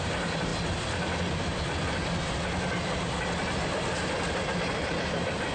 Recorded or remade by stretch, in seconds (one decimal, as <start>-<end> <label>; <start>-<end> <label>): 0.0-0.5 remade; 0.5-3.6 recorded; 3.6-5.5 remade